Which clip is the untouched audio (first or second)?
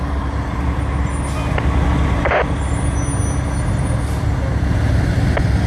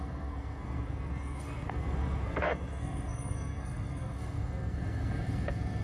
first